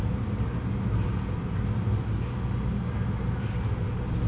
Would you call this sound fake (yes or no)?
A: no